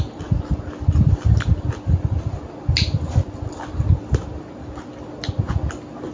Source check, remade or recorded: recorded